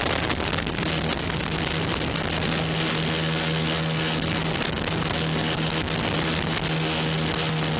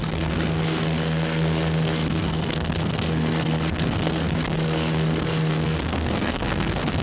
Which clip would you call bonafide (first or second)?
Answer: first